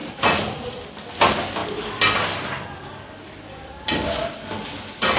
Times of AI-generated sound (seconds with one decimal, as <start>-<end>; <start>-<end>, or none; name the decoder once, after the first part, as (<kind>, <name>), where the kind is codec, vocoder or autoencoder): 0.0-0.8 (vocoder, Vocos)